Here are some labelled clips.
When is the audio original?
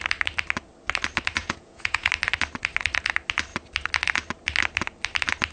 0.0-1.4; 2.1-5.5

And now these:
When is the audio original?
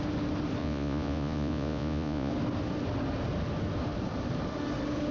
0.0-0.6; 2.3-5.1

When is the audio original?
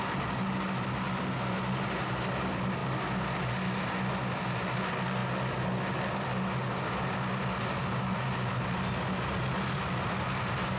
0.0-10.8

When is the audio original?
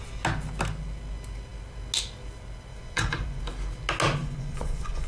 0.0-2.7; 3.4-4.2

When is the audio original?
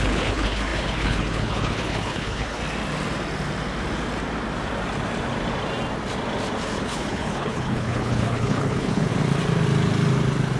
2.6-6.8; 9.1-10.6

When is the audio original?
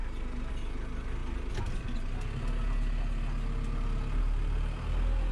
0.0-5.3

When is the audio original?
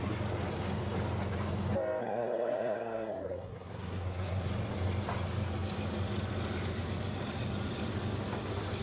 0.0-2.0; 4.5-8.8